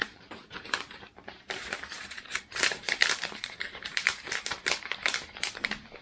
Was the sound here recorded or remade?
remade